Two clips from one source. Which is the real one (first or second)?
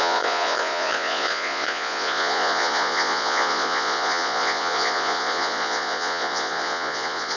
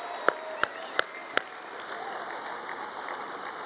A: second